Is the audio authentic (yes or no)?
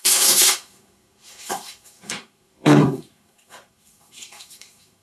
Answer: no